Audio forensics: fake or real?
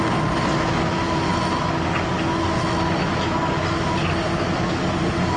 real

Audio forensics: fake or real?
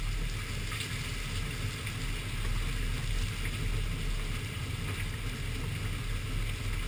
real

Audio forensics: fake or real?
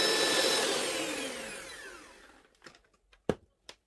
fake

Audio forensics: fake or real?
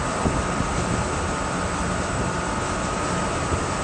real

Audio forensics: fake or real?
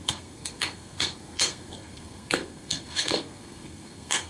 fake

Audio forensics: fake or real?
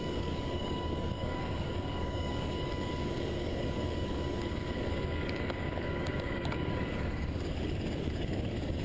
fake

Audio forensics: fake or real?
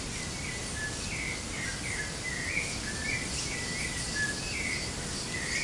real